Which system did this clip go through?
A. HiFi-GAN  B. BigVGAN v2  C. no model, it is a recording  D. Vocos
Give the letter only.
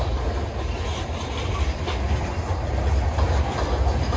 C